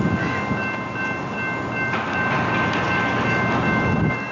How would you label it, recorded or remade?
recorded